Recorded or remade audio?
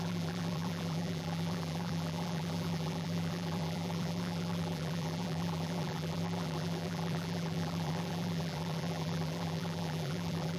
remade